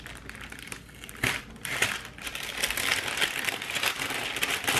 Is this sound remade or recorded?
recorded